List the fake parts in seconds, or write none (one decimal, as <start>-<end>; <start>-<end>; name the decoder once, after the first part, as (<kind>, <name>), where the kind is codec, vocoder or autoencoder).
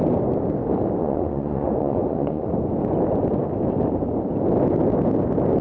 1.0-2.5 (vocoder, Vocos)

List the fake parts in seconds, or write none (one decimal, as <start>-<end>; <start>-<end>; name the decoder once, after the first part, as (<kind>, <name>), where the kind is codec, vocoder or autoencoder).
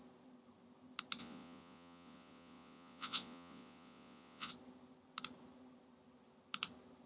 1.2-4.5 (vocoder, Vocos)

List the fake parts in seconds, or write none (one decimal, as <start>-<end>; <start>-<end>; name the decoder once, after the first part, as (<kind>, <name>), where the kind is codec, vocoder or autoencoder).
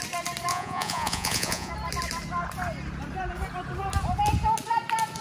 0.5-1.7 (vocoder, Vocos)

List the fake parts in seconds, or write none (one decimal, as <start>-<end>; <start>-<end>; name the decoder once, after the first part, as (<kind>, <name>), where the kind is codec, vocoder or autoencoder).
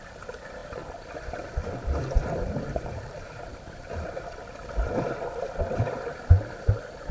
none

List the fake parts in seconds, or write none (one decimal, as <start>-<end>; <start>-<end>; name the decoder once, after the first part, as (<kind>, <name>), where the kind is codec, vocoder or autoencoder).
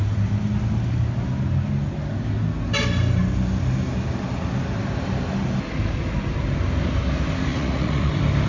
7.5-8.1 (vocoder, Vocos)